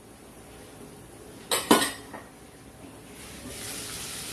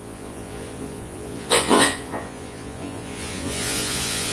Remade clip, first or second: second